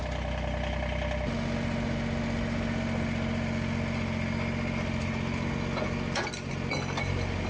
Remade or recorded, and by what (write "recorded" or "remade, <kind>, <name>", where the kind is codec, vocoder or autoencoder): recorded